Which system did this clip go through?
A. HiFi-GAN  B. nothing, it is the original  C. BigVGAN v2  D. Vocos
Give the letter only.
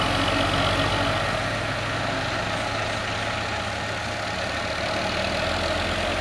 B